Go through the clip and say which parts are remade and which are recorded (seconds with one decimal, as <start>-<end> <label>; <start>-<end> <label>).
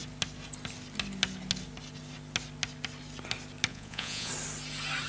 0.0-3.7 recorded; 3.7-4.3 remade; 4.3-5.1 recorded